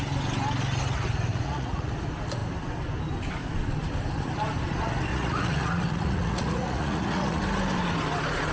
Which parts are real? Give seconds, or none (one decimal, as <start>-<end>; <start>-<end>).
0.0-1.3; 1.9-5.1; 7.4-8.5